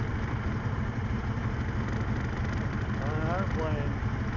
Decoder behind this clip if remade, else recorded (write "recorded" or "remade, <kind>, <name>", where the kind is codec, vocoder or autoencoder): recorded